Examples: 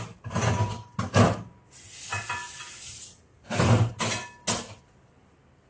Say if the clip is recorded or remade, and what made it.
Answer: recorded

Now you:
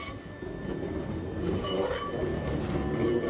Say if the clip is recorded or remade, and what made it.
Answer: recorded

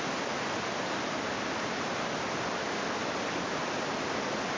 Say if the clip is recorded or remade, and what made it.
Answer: recorded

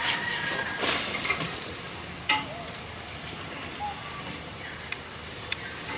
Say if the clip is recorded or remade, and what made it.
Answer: recorded